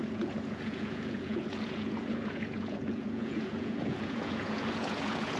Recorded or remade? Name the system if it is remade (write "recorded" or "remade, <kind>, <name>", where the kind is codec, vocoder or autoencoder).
remade, vocoder, Vocos